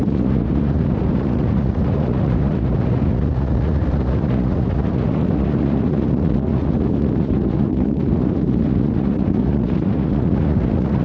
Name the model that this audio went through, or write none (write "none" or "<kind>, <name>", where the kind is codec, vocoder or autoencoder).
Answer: vocoder, Vocos